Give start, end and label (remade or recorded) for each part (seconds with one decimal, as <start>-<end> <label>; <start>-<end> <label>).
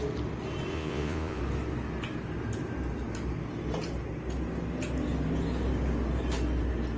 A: 0.0-0.7 recorded; 0.7-1.4 remade; 1.4-7.0 recorded